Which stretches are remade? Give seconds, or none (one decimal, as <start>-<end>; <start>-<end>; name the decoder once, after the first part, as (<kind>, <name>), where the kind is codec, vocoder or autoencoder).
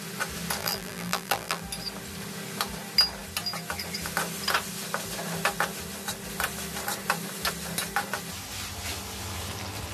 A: 0.6-1.6 (vocoder, BigVGAN v2)